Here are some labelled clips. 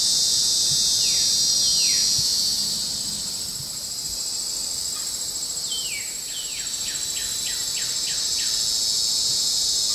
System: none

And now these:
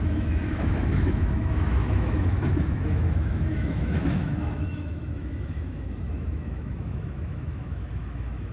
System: autoencoder, DAC-VAE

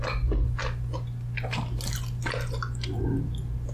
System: none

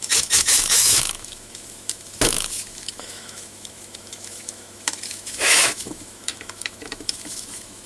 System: autoencoder, DAC-VAE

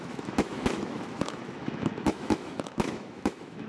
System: autoencoder, DAC-VAE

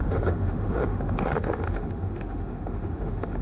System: autoencoder, DAC-VAE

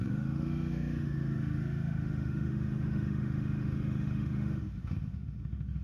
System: autoencoder, DAC-VAE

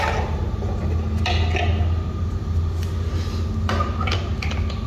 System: none